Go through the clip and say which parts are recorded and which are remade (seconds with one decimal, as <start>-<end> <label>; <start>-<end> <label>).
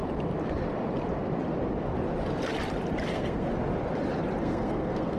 0.0-3.1 recorded; 3.1-3.5 remade; 3.5-4.4 recorded; 4.4-5.2 remade